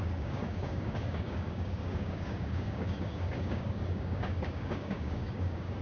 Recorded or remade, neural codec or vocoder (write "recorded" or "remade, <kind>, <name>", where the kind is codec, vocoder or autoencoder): remade, codec, DAC